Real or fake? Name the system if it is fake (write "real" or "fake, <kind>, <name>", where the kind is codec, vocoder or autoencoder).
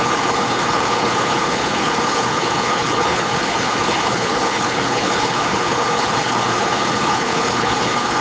fake, codec, HILCodec